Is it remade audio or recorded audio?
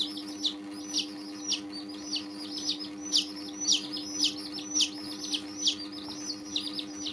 recorded